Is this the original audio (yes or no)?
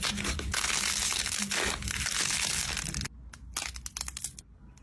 yes